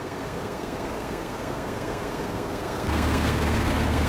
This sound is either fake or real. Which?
fake